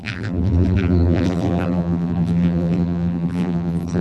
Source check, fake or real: fake